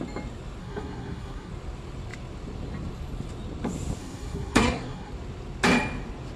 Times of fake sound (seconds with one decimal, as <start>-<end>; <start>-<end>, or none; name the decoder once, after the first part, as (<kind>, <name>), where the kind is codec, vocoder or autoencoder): 0.6-1.5 (codec, SNAC); 4.0-5.1